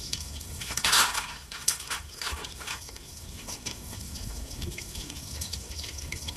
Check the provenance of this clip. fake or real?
fake